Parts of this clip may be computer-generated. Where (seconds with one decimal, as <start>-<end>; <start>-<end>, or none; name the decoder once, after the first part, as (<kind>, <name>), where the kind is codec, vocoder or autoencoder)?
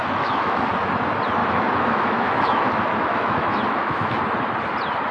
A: 0.0-0.7 (autoencoder, DAC-VAE); 1.4-4.2